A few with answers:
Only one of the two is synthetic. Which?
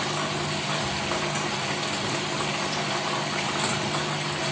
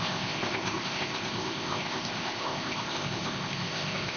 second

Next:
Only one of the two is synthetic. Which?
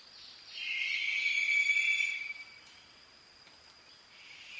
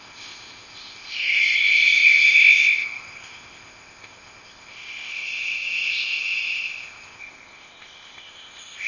second